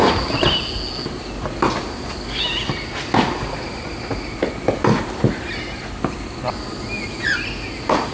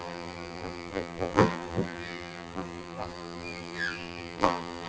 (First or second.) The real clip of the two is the first